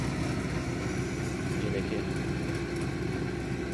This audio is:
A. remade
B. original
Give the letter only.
B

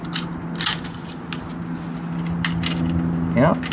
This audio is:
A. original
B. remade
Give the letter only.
A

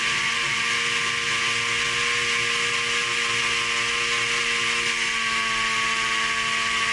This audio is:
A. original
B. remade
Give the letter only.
A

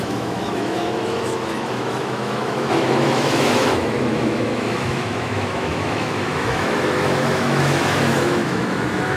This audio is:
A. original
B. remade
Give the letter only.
B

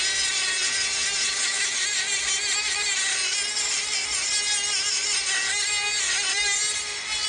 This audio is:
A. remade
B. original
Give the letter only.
B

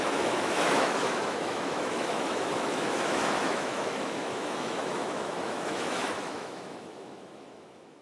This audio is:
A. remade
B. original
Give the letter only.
A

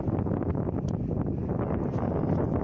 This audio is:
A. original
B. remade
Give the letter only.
A